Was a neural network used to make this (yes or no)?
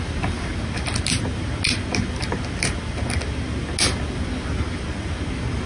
no